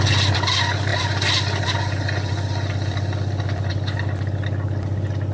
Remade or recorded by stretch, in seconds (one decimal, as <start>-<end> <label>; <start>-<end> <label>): 0.0-5.3 recorded